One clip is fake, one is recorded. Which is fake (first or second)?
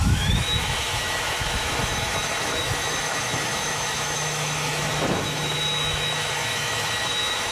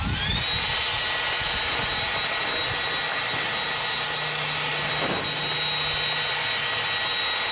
first